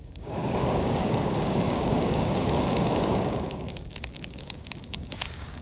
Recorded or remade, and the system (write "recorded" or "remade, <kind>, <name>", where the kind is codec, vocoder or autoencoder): remade, codec, DAC